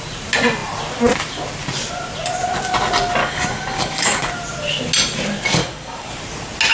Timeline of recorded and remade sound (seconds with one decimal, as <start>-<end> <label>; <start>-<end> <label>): 0.0-3.2 recorded; 3.2-4.3 remade; 4.3-5.6 recorded; 5.6-6.1 remade; 6.1-6.7 recorded